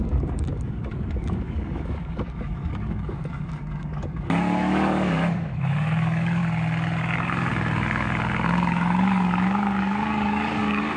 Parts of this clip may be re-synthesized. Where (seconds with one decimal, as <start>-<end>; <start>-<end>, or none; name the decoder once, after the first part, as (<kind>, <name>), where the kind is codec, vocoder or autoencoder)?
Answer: 0.0-6.4 (codec, DAC); 7.0-11.0